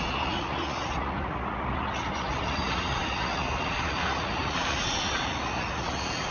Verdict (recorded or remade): remade